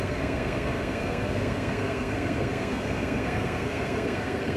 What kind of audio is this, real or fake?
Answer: fake